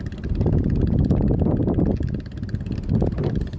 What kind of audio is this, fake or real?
real